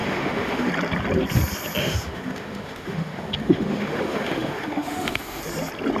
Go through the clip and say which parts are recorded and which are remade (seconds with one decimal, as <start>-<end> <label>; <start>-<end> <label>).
0.0-0.7 remade; 0.7-1.8 recorded; 1.8-5.4 remade; 5.4-6.0 recorded

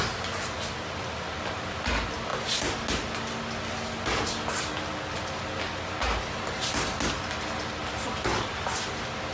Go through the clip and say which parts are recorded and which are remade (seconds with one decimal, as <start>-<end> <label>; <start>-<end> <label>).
0.0-9.3 recorded

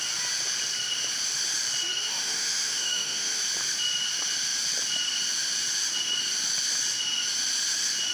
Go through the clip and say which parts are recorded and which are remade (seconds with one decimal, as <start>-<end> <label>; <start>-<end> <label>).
0.0-2.1 recorded; 2.1-3.4 remade; 3.4-8.1 recorded